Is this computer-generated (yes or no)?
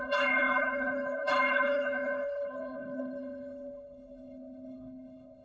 yes